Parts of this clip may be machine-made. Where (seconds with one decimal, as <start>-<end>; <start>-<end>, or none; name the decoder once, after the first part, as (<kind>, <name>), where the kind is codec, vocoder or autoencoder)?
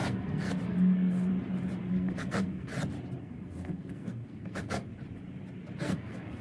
0.0-1.3 (codec, SNAC); 1.9-2.7; 3.2-4.9; 5.8-6.4